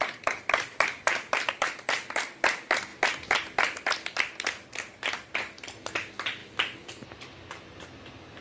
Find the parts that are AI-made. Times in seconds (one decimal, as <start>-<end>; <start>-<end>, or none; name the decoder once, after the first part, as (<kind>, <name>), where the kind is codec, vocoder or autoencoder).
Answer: none